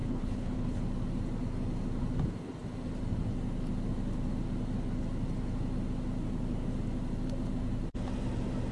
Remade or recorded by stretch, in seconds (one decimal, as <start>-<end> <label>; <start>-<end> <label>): 0.0-0.8 remade; 0.8-8.7 recorded